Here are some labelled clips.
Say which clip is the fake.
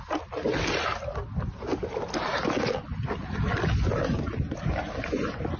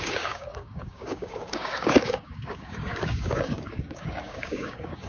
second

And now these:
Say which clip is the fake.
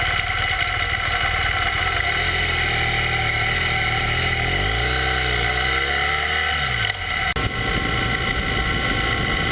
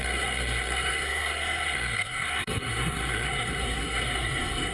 second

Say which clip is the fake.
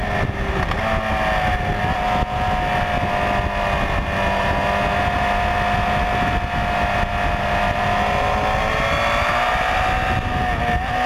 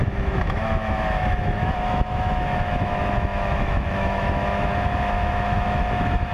second